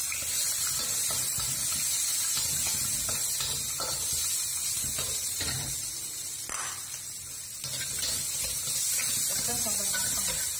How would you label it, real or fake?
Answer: real